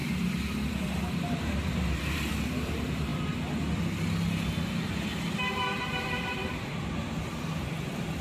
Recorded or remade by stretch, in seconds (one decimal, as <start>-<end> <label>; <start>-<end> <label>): 0.0-0.7 recorded; 0.7-3.1 remade; 3.1-5.5 recorded; 5.5-8.2 remade